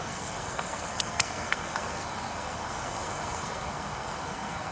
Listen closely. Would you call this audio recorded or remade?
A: remade